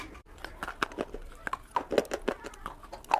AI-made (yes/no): no